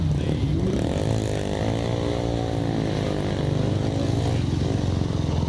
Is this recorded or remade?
recorded